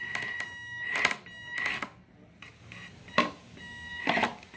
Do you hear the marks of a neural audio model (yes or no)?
no